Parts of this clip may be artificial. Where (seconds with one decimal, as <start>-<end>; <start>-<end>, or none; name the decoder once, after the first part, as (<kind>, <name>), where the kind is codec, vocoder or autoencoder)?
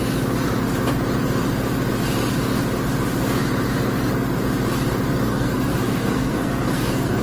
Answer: 5.3-7.2 (codec, SNAC)